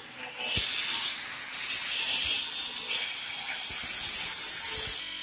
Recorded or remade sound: recorded